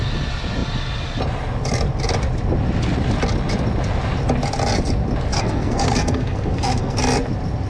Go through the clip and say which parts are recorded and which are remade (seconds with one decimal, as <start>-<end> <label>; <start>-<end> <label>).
0.0-5.3 recorded; 5.3-7.0 remade; 7.0-7.7 recorded